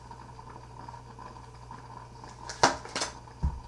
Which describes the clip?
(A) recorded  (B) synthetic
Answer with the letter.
A